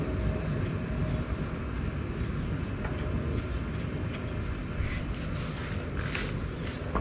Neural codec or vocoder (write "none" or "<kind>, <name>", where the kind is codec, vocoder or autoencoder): none